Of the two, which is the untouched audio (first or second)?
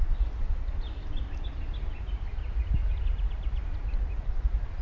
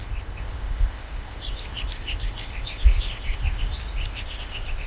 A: first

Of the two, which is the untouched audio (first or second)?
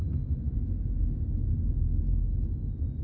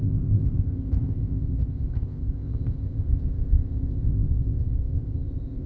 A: first